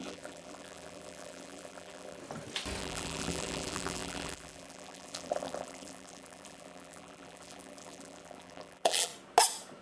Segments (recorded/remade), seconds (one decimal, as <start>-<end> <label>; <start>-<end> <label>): 0.0-2.2 remade; 2.2-2.8 recorded; 2.8-9.1 remade; 9.1-9.8 recorded